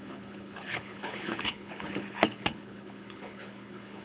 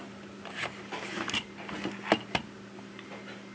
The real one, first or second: second